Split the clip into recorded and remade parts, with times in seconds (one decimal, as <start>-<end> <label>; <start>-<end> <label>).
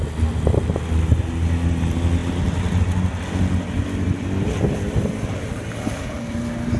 0.0-6.8 recorded